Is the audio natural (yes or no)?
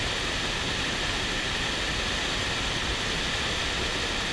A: yes